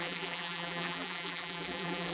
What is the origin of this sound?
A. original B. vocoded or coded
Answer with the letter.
B